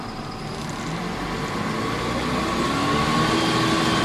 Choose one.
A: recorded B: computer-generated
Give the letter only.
A